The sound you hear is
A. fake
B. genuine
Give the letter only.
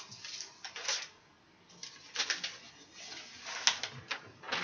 B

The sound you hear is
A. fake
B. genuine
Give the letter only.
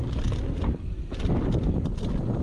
B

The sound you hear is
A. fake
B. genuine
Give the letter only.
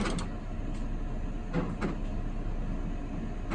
B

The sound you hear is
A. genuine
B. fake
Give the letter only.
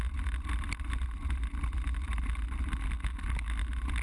A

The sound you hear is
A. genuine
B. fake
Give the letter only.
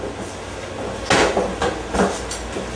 A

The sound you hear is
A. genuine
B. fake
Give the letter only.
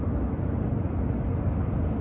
A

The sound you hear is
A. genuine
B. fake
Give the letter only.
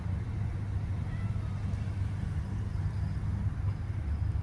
A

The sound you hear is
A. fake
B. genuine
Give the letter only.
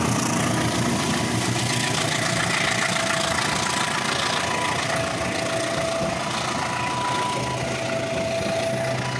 B